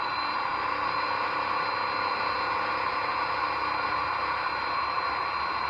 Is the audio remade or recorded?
recorded